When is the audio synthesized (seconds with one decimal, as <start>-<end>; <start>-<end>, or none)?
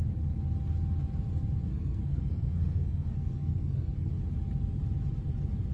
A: 1.7-4.1